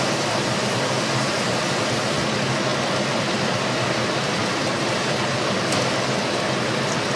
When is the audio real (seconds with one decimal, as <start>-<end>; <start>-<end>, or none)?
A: 0.0-7.2